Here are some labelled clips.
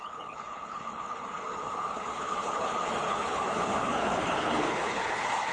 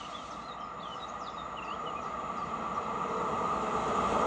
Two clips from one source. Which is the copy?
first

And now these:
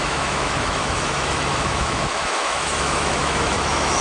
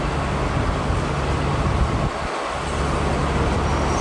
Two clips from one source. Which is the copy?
first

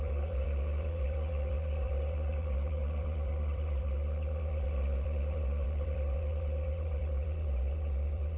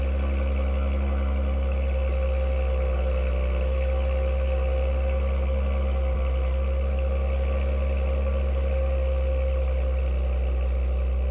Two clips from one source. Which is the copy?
first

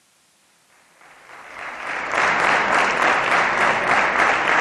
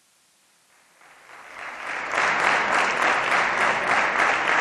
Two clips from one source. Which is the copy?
first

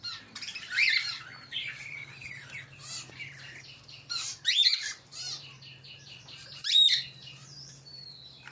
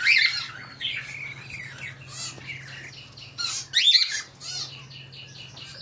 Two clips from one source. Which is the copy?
first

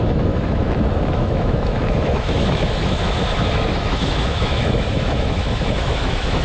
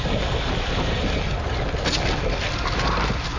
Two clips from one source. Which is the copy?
first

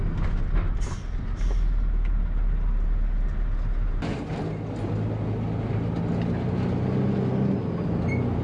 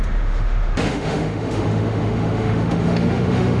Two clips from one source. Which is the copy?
second